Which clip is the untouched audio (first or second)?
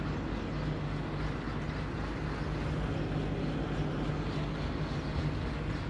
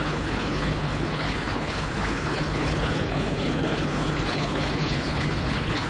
first